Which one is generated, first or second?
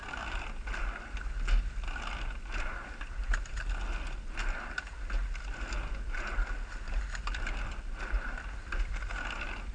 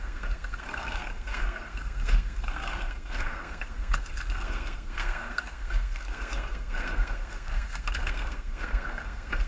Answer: second